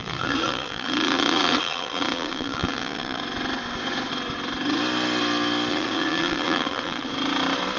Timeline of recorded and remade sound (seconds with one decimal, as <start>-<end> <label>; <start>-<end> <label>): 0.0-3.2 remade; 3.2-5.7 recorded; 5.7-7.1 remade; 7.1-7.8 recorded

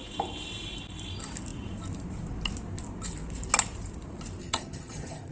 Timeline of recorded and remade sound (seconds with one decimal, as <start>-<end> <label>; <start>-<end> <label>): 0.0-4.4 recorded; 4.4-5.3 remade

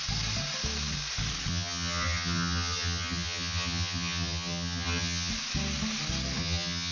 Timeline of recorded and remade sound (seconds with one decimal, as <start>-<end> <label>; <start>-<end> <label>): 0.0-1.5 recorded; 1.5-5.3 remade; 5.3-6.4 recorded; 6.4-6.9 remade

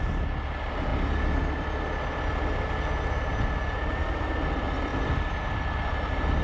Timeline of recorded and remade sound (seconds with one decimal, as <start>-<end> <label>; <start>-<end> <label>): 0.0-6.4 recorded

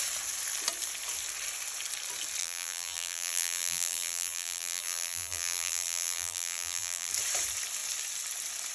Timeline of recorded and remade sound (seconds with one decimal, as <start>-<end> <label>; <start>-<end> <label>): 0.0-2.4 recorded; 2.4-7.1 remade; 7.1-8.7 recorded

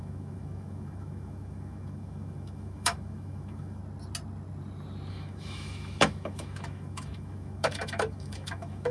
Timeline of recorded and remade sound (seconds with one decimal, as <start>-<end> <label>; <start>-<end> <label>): 0.0-3.8 remade; 3.8-5.1 recorded; 5.1-8.9 remade

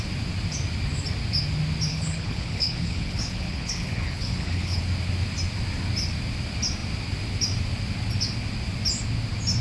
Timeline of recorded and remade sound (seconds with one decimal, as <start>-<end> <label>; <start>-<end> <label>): 0.0-1.9 recorded; 1.9-4.8 remade; 4.8-9.6 recorded

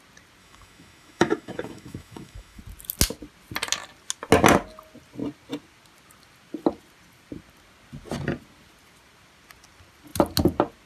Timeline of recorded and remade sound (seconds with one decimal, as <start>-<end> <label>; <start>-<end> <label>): 0.0-0.4 recorded; 0.4-2.6 remade; 2.6-10.9 recorded